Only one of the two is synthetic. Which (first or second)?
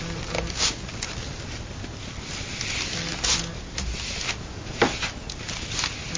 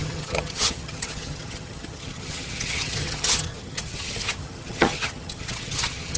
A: second